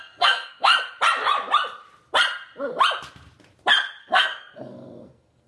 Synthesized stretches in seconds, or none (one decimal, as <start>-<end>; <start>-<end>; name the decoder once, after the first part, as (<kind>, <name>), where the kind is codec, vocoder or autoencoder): 0.0-0.7 (codec, SNAC); 4.0-5.5